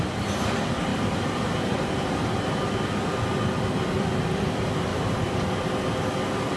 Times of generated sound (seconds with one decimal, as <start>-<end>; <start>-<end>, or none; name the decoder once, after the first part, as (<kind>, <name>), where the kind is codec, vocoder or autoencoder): 0.9-2.3 (vocoder, BigVGAN v2); 4.9-5.5